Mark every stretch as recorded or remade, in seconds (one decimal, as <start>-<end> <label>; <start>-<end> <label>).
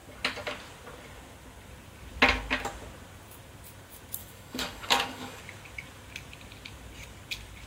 0.0-4.2 recorded; 4.2-5.4 remade; 5.4-7.7 recorded